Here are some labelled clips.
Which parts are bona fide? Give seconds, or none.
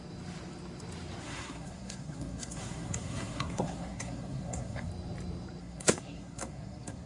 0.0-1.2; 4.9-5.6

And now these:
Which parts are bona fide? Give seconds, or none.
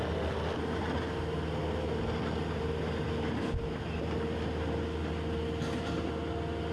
0.0-6.7